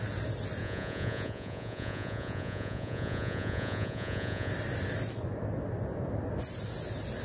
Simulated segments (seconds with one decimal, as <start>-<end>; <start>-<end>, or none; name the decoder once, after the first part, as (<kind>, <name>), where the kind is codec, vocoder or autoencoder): 0.6-4.5 (vocoder, Vocos)